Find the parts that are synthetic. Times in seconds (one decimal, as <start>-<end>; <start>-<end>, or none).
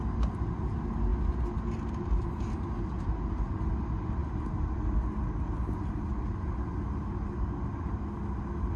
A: none